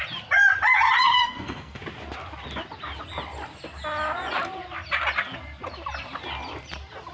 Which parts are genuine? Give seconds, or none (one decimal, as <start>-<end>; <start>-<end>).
0.0-1.2; 1.8-7.1